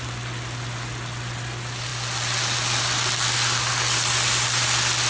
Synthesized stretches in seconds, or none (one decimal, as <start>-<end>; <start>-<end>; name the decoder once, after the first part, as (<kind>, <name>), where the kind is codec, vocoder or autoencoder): none

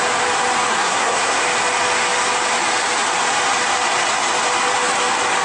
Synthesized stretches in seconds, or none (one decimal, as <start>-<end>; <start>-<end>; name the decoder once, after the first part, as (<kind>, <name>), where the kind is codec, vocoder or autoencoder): 0.7-1.4 (codec, SNAC)

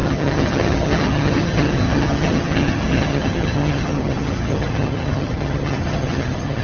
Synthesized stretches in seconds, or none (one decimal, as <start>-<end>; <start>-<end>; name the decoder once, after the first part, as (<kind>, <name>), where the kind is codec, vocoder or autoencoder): 0.0-6.6 (vocoder, HiFi-GAN)

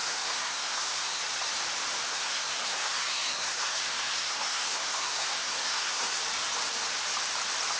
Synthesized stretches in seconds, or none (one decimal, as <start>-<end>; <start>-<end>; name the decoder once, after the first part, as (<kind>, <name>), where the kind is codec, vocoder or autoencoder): 0.0-1.2 (codec, SNAC); 2.1-6.2

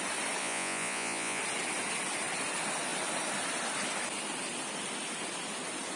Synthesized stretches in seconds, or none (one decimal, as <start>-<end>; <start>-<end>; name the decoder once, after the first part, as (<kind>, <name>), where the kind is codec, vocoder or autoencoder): 0.4-1.4 (vocoder, Vocos)